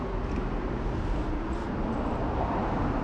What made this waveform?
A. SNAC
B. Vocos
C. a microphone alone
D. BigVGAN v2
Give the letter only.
C